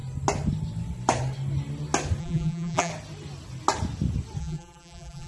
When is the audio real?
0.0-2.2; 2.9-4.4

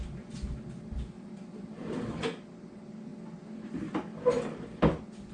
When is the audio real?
0.0-5.3